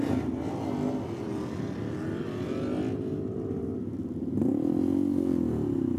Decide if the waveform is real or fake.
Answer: real